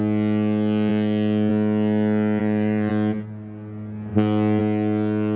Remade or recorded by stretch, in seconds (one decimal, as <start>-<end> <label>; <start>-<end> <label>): 0.0-2.4 recorded; 2.4-2.9 remade; 2.9-5.4 recorded